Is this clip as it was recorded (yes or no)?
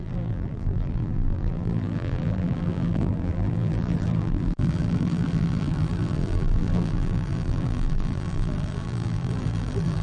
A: no